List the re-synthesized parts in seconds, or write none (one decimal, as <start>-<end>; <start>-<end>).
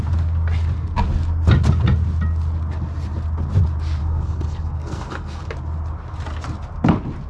4.0-5.4